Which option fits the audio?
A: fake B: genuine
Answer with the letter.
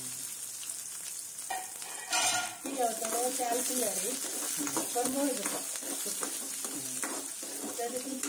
B